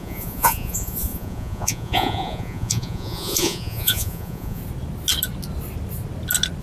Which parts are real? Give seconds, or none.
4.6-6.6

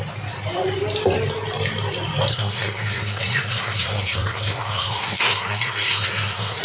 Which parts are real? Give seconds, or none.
0.0-2.3